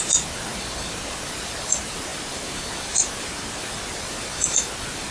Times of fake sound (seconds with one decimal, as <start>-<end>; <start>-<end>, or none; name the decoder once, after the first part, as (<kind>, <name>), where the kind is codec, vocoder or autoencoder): none